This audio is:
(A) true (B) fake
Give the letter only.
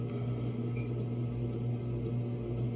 A